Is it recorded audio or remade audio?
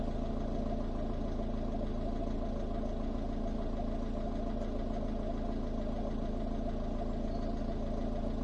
recorded